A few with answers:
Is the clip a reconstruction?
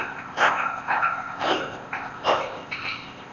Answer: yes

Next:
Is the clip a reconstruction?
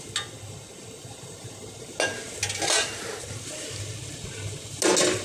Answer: no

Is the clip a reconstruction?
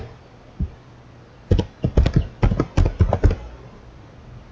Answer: no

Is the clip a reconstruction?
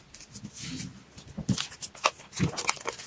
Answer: no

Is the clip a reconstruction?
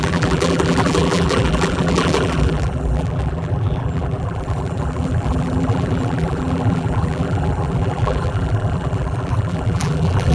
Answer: yes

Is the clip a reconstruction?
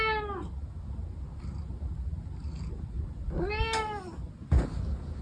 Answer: no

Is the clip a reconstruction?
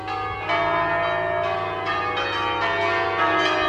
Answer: no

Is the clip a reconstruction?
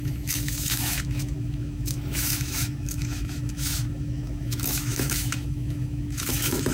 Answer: yes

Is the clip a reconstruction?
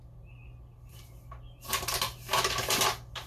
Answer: no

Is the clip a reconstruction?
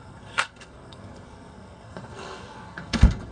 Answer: yes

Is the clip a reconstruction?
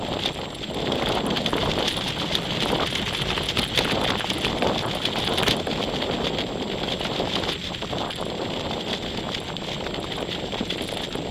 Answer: no